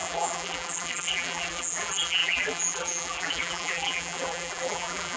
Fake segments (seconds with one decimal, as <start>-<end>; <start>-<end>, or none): 0.0-5.2

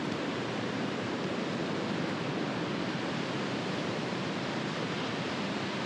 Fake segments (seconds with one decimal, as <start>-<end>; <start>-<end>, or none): 0.0-1.6; 4.0-5.9